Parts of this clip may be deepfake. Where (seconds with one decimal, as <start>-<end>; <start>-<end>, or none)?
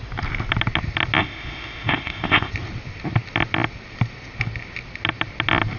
1.2-2.5